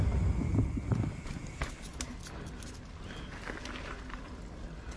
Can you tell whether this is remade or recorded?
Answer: recorded